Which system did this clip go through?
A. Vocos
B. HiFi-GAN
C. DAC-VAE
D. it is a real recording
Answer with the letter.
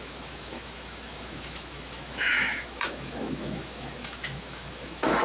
C